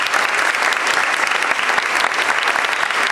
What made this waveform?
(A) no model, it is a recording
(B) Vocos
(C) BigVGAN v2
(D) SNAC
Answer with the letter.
A